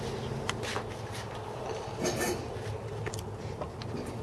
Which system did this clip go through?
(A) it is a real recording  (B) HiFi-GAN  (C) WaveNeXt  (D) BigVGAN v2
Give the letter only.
A